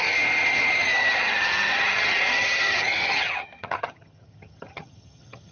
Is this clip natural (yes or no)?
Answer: no